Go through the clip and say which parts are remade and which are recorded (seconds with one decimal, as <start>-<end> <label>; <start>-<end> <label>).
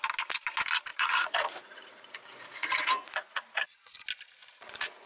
0.0-0.9 recorded; 0.9-4.0 remade; 4.0-4.4 recorded; 4.4-5.1 remade